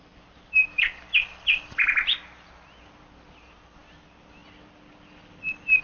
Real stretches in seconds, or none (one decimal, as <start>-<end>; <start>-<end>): 0.0-5.8